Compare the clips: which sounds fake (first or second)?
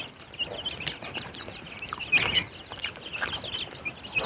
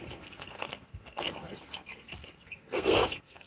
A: second